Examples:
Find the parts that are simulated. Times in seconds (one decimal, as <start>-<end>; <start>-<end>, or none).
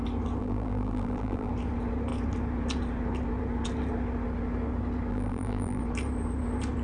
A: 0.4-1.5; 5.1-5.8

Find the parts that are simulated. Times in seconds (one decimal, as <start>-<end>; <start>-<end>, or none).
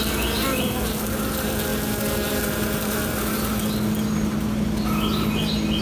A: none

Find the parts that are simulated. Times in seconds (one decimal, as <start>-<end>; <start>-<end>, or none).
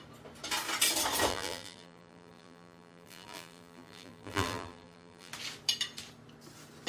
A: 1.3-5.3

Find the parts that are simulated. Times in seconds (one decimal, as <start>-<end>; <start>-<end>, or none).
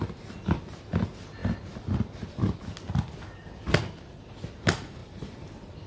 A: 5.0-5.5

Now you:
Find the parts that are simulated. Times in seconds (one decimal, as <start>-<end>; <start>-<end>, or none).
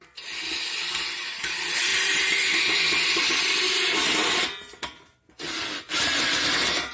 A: 1.9-2.6